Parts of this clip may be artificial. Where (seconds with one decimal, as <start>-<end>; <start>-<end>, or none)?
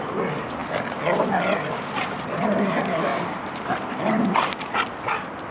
none